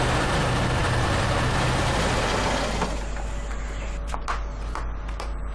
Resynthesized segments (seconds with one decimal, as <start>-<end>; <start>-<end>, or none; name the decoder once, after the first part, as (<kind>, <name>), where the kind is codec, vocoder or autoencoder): none